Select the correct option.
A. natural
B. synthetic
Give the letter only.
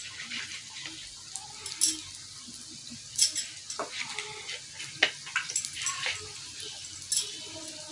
A